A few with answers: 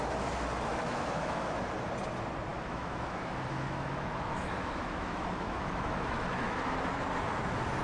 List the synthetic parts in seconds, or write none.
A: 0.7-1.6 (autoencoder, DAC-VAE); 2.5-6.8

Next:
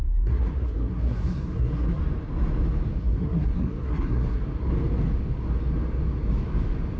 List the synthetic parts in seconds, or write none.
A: 0.0-2.0 (codec, SNAC); 3.0-4.4

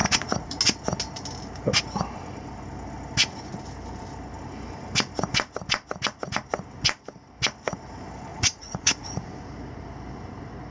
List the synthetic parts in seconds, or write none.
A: 0.0-0.6 (vocoder, Vocos); 8.3-9.1

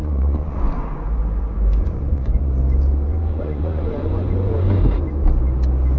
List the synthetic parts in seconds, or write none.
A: 0.0-2.5 (vocoder, Vocos); 3.1-4.8

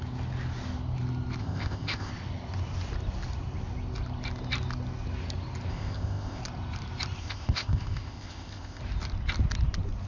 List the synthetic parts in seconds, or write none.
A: 1.4-2.1 (codec, ZipCodec); 5.7-6.4; 7.2-8.8

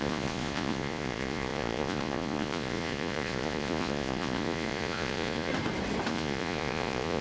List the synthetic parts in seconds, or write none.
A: 0.0-5.5 (vocoder, Vocos); 6.1-7.2

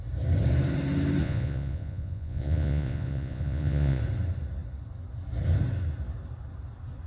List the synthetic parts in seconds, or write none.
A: 1.2-4.0 (vocoder, Vocos)

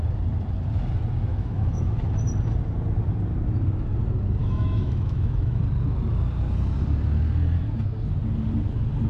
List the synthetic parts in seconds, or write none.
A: 1.3-2.1 (autoencoder, DAC-VAE); 4.4-5.6